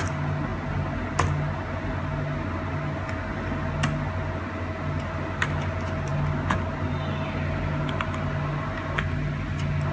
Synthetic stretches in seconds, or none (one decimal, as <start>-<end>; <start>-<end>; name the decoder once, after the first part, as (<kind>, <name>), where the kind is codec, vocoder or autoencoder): none